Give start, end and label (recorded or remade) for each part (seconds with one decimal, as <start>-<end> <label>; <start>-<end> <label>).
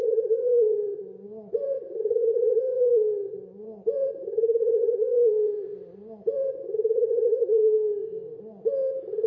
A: 0.0-7.9 remade; 7.9-9.3 recorded